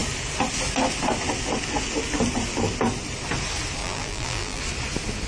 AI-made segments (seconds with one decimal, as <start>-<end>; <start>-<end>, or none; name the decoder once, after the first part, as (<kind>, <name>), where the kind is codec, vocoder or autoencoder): 3.8-4.6 (vocoder, BigVGAN v2)